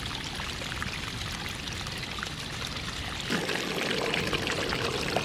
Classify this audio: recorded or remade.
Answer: recorded